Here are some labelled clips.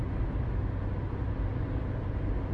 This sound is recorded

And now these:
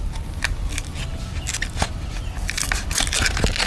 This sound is recorded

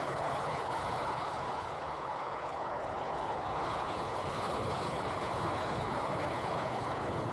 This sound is remade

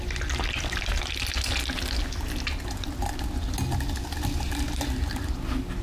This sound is recorded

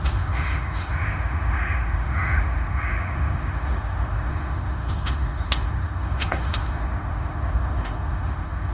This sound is remade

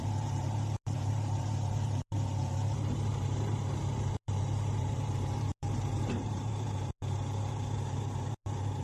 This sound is remade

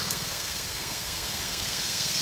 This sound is remade